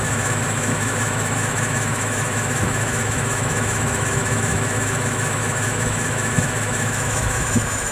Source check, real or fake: fake